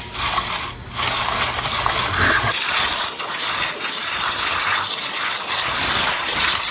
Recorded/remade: recorded